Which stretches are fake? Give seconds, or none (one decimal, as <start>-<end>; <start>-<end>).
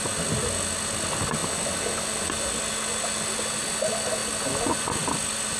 none